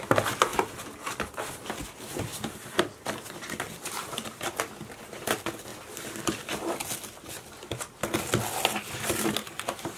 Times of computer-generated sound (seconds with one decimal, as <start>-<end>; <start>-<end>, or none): 2.3-2.8; 4.0-5.3; 5.7-6.7